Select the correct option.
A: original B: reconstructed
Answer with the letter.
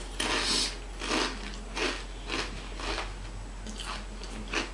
A